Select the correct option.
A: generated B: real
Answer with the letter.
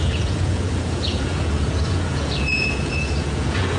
A